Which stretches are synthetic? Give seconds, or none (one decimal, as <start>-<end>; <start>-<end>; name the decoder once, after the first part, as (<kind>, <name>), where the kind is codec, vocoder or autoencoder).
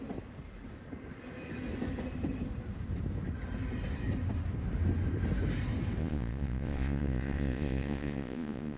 6.0-8.8 (vocoder, Vocos)